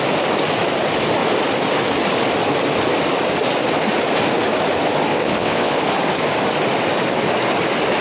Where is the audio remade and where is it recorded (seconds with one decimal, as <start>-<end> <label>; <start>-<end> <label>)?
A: 0.0-5.1 recorded; 5.1-5.8 remade; 5.8-8.0 recorded